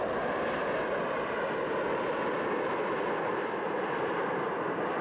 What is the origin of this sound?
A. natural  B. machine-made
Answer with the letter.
A